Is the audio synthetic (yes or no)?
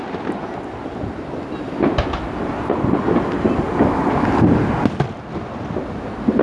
no